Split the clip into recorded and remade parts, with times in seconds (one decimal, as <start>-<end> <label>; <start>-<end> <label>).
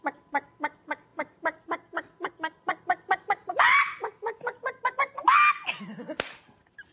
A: 0.0-6.9 recorded